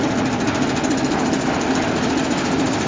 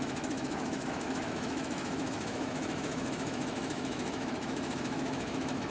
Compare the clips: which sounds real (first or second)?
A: first